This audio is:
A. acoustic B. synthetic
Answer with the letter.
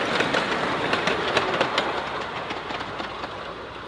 A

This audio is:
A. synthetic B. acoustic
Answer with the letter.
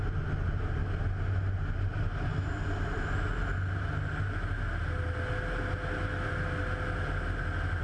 B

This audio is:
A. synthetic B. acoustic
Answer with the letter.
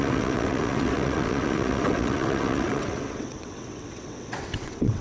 A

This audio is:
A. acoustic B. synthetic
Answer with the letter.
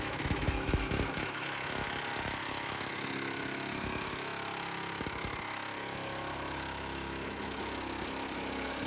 B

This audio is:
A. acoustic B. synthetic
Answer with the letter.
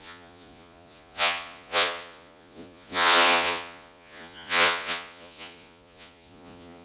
B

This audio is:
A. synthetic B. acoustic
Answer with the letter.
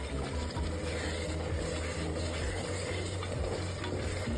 B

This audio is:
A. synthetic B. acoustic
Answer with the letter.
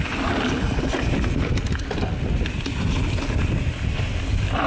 B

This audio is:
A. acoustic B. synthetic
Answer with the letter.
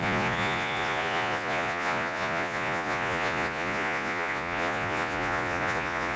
B